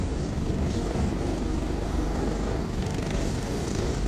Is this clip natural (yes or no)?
no